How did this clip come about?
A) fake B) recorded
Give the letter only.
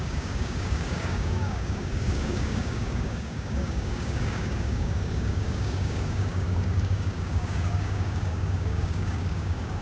A